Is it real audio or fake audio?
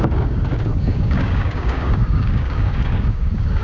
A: fake